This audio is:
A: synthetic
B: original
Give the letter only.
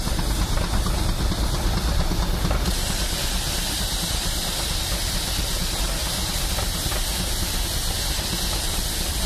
B